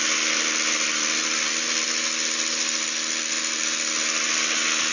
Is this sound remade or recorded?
recorded